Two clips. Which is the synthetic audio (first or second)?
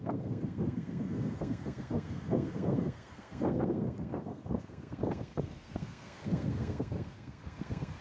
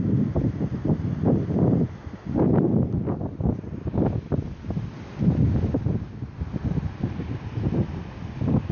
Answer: first